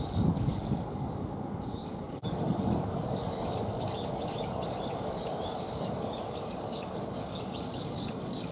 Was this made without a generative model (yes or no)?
no